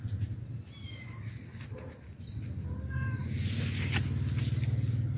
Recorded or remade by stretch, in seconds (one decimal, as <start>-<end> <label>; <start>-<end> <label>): 0.0-5.2 recorded